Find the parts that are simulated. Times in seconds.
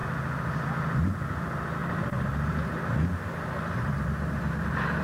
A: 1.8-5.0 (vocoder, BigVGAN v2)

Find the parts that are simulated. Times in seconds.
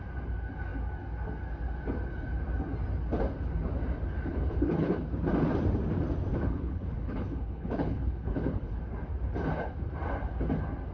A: 4.3-5.0 (codec, HILCodec); 6.3-8.8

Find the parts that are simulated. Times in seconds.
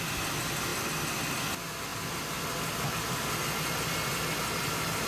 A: none